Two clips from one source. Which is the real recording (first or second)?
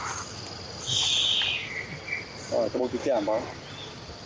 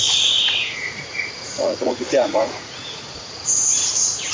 first